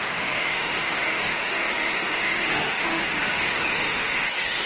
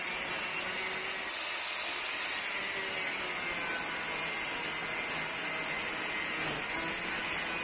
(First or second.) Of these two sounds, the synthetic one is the first